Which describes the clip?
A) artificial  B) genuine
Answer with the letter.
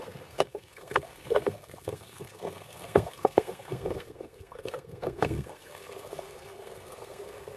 A